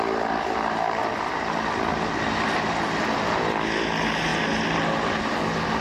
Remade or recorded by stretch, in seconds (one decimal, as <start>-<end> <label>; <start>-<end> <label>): 0.0-5.8 recorded